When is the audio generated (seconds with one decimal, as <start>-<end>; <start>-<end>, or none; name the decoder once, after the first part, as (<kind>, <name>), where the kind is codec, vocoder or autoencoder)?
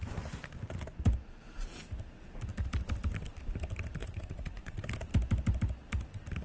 4.0-4.9 (vocoder, Vocos)